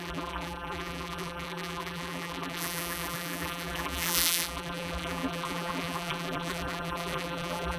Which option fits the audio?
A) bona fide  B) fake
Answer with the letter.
B